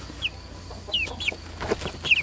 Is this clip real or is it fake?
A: real